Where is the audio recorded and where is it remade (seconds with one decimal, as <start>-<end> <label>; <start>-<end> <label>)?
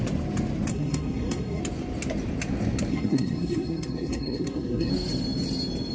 0.0-0.7 recorded; 0.7-1.6 remade; 1.6-2.9 recorded; 2.9-4.9 remade; 4.9-5.9 recorded